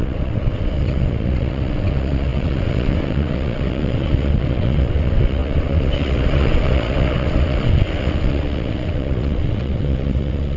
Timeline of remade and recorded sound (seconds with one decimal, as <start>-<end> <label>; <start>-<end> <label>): 0.0-10.6 remade

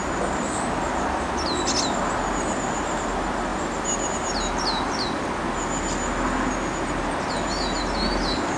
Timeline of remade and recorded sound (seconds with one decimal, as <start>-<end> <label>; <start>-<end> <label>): 0.0-8.6 recorded

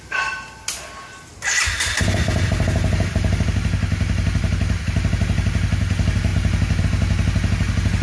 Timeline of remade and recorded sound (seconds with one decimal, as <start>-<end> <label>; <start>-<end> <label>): 0.0-8.0 recorded